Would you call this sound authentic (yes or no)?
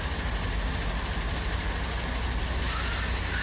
yes